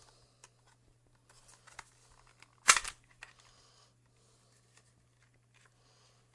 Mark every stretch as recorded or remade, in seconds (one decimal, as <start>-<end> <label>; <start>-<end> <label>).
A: 0.0-6.3 recorded